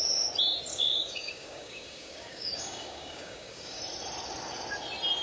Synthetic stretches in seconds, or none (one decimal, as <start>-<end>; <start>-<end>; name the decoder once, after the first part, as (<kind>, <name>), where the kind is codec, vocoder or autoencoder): 0.7-3.8 (codec, DAC)